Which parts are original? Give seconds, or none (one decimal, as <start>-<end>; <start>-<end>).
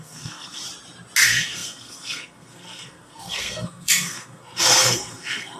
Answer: 0.6-1.2